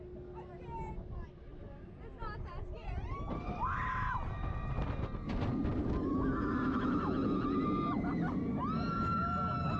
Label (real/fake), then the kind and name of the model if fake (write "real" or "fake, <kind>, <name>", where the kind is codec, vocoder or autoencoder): real